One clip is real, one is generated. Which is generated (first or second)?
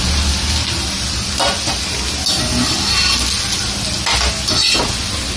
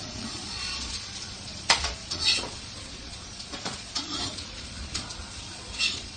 second